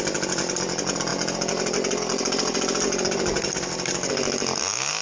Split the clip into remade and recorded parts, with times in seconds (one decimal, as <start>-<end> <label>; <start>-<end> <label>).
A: 0.0-5.0 recorded